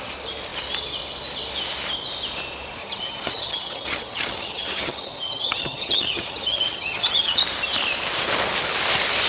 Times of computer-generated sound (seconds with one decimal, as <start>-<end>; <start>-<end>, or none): 2.8-7.4